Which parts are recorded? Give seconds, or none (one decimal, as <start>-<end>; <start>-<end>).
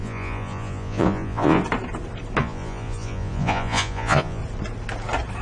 1.6-2.4; 4.4-5.4